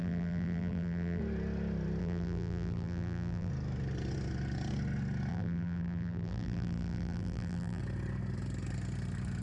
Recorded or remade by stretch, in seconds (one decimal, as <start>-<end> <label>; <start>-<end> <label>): 0.0-1.2 remade; 1.2-2.0 recorded; 2.0-3.5 remade; 3.5-5.3 recorded; 5.3-7.8 remade; 7.8-9.4 recorded